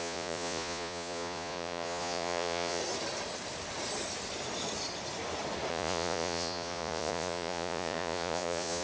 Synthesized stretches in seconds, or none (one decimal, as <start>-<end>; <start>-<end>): 0.0-2.8; 5.7-8.8